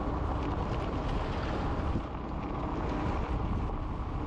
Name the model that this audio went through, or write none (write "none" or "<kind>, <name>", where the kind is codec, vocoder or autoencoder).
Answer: none